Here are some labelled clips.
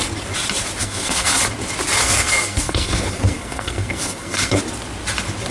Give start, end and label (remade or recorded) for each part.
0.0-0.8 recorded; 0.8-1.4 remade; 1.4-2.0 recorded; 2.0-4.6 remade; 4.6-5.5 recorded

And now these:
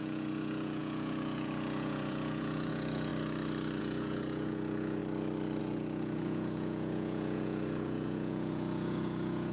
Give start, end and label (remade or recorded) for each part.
0.0-3.1 remade; 3.1-3.8 recorded; 3.8-5.0 remade; 5.0-5.6 recorded; 5.6-9.5 remade

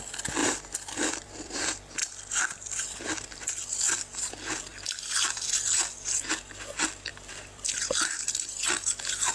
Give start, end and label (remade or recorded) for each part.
0.0-0.4 recorded; 0.4-1.6 remade; 1.6-2.0 recorded; 2.0-3.7 remade; 3.7-4.7 recorded; 4.7-5.5 remade; 5.5-7.1 recorded; 7.1-8.7 remade; 8.7-9.3 recorded

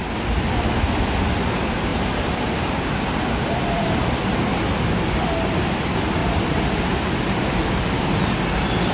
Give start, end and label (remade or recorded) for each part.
0.0-1.9 recorded; 1.9-4.1 remade; 4.1-6.2 recorded; 6.2-7.8 remade; 7.8-8.9 recorded

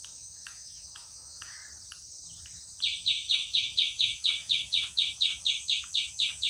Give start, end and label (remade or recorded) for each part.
0.0-1.6 remade; 1.6-3.0 recorded; 3.0-6.5 remade

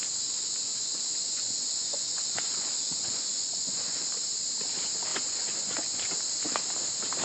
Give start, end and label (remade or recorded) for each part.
0.0-0.6 recorded; 0.6-4.0 remade; 4.0-5.1 recorded; 5.1-6.0 remade; 6.0-7.2 recorded

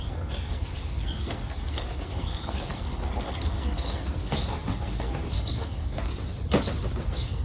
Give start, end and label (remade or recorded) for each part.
0.0-6.1 remade; 6.1-7.0 recorded; 7.0-7.4 remade

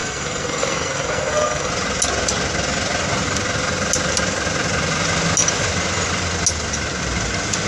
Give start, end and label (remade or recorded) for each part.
0.0-1.7 remade; 1.7-7.7 recorded